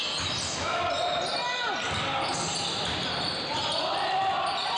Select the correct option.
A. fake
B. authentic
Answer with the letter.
B